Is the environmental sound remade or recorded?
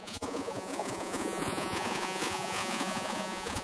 remade